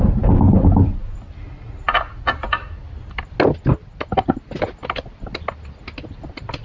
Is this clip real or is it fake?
real